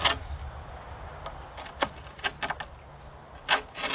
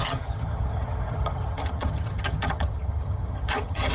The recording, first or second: first